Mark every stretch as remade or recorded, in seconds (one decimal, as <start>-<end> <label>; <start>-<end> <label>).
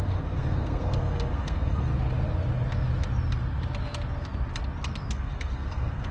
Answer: 0.0-1.9 remade; 1.9-5.1 recorded; 5.1-6.1 remade